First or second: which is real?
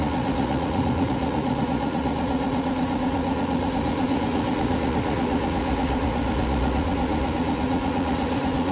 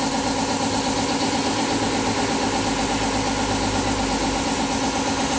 second